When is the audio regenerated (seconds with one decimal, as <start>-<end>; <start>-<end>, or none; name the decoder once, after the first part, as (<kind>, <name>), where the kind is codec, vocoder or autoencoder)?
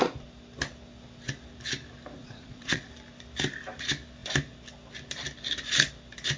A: 2.2-2.9 (vocoder, Vocos)